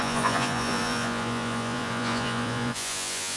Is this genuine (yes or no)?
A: no